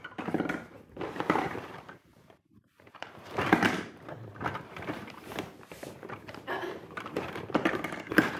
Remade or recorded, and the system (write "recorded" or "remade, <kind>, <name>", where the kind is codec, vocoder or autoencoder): remade, vocoder, BigVGAN v2